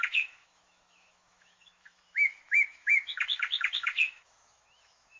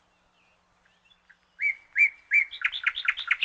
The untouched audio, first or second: second